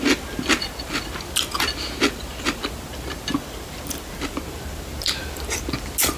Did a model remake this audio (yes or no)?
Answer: no